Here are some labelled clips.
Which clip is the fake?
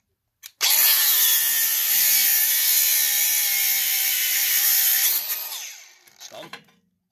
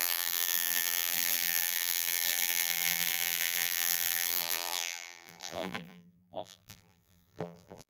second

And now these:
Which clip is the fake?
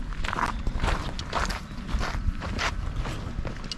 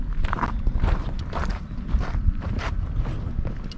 second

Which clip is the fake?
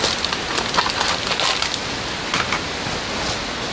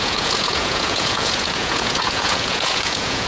second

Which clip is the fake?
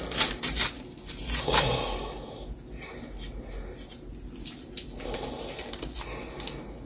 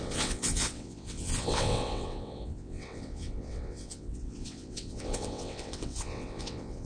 second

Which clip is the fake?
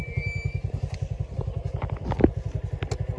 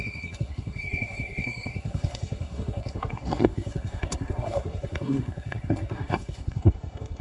second